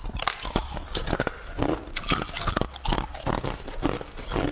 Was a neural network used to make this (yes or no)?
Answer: no